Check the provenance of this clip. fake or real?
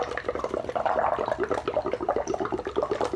real